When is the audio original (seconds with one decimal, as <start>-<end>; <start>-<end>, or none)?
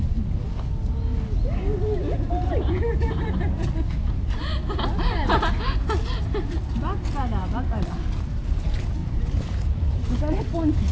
0.0-4.9; 5.5-7.4; 8.3-9.0; 10.2-10.9